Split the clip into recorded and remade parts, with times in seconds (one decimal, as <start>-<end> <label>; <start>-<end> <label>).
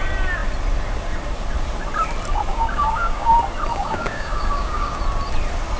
0.0-2.5 recorded; 2.5-3.3 remade; 3.3-3.7 recorded; 3.7-5.0 remade; 5.0-5.8 recorded